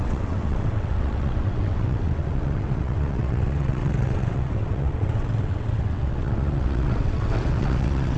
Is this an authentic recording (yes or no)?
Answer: no